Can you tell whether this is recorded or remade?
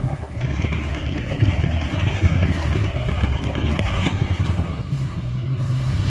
remade